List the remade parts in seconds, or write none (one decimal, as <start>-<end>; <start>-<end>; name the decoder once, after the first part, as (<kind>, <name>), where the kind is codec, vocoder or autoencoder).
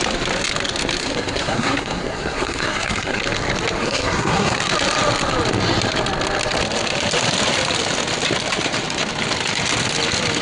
1.0-3.2 (codec, SNAC); 3.8-4.6